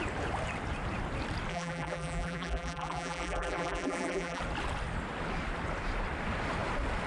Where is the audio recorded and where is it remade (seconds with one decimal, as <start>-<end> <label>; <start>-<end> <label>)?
0.0-1.5 recorded; 1.5-4.4 remade; 4.4-7.1 recorded